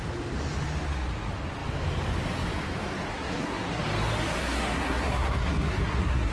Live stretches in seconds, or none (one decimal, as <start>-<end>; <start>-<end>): 0.0-3.1; 3.8-4.4